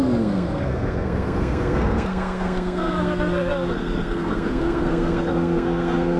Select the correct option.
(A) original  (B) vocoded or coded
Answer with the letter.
B